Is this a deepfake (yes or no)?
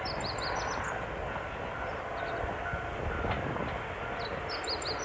no